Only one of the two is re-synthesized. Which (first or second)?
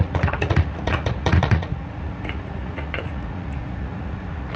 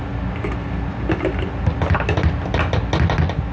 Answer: first